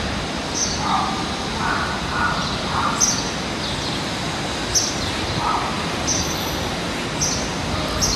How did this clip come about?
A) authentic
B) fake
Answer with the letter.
A